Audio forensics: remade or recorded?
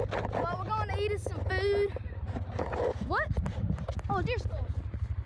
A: recorded